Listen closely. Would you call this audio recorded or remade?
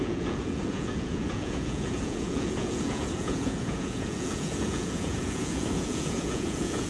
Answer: remade